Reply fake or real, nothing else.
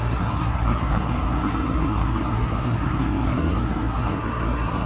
fake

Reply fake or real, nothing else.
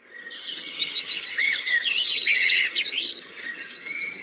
fake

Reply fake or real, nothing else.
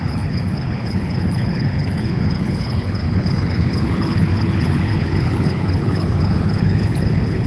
fake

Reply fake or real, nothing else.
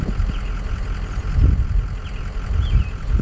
real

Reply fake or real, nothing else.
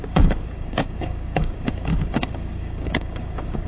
fake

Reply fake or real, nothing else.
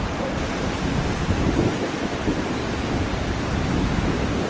fake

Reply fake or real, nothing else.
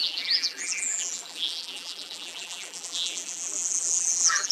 fake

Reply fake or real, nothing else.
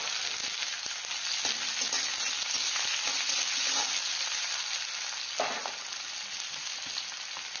real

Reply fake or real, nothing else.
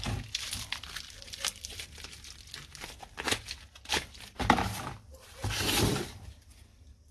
real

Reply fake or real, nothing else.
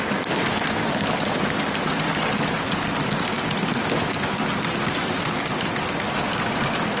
real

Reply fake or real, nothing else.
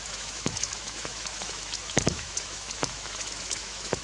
fake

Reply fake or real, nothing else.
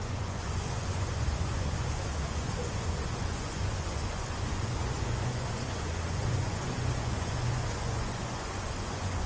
fake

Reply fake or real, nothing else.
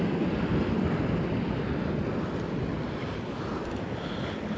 real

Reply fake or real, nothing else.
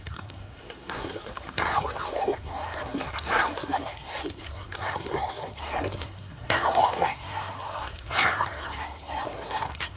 fake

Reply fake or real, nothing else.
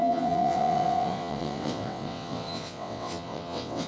fake